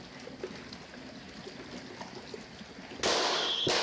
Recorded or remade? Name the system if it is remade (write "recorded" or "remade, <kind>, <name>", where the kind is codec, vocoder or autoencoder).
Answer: recorded